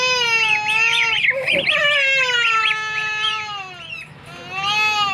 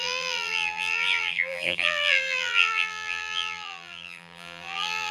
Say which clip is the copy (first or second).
second